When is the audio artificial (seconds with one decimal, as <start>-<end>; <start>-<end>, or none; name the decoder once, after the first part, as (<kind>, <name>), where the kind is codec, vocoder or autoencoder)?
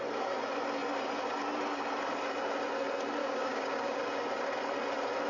3.2-4.0 (codec, DAC)